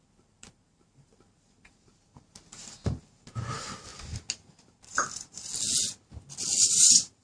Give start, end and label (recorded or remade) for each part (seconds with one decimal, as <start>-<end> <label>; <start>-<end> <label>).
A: 0.0-3.9 remade; 3.9-4.7 recorded; 4.7-5.5 remade; 5.5-6.6 recorded; 6.6-7.2 remade